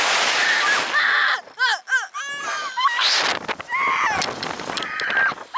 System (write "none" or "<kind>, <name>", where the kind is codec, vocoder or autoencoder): none